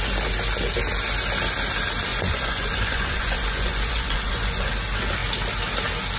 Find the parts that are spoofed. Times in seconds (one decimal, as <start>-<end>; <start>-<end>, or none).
2.1-4.7